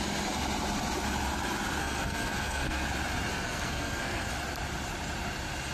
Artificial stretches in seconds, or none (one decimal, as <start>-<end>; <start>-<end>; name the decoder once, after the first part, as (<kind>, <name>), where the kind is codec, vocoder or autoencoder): 1.8-2.9 (codec, SNAC); 3.3-4.3